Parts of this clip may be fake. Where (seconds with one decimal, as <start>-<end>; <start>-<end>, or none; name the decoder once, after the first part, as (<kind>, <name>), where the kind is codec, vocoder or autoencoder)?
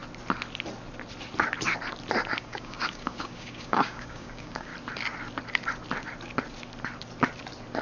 2.3-4.7 (codec, DAC)